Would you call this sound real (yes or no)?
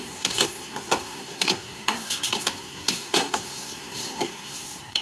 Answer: no